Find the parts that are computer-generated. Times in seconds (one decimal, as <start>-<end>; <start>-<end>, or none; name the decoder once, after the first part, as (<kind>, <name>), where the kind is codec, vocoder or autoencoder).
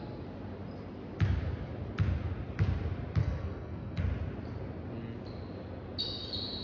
3.2-4.0 (codec, SNAC)